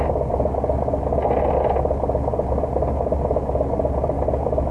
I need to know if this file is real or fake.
real